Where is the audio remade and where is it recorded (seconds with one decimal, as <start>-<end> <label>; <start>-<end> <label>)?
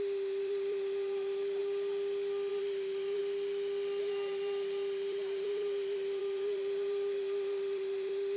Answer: 0.0-1.6 remade; 1.6-2.5 recorded; 2.5-3.2 remade; 3.2-4.0 recorded; 4.0-8.4 remade